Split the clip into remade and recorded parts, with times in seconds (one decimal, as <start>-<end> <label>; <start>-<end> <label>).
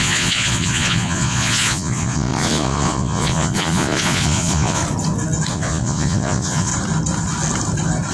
0.0-4.8 remade; 4.8-5.5 recorded; 5.5-6.7 remade; 6.7-8.1 recorded